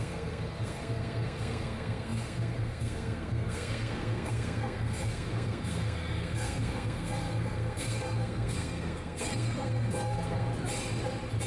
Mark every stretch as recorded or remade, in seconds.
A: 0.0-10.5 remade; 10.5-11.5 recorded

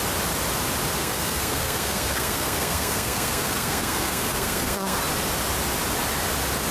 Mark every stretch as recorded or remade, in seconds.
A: 0.0-1.0 recorded; 1.0-5.0 remade; 5.0-6.7 recorded

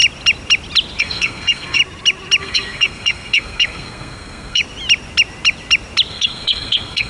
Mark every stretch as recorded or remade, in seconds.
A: 0.0-1.0 recorded; 1.0-1.8 remade; 1.8-2.4 recorded; 2.4-4.6 remade; 4.6-6.1 recorded; 6.1-7.1 remade

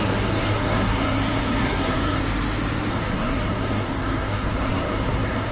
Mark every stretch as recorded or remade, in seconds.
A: 0.0-2.2 remade; 2.2-2.9 recorded; 2.9-5.5 remade